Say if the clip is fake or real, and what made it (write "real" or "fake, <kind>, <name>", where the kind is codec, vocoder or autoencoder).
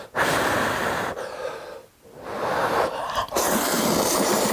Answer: fake, vocoder, BigVGAN v2